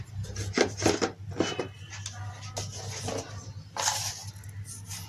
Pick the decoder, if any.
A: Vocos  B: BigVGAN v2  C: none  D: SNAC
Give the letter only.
C